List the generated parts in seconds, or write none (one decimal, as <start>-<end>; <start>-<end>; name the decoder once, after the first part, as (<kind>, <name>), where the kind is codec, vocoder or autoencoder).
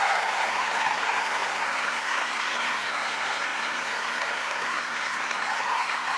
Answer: 0.0-6.2 (codec, SNAC)